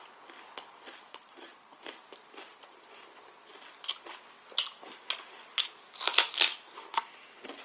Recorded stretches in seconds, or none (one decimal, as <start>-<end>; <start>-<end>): 0.0-1.1; 1.8-7.6